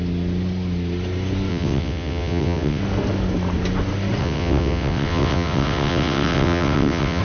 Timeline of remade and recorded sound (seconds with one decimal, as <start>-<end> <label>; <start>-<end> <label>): 0.0-1.5 recorded; 1.5-2.8 remade; 2.8-4.2 recorded; 4.2-7.2 remade